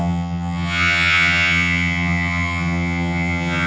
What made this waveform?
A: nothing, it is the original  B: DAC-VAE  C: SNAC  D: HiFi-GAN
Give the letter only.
D